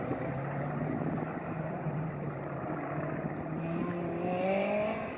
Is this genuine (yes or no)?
yes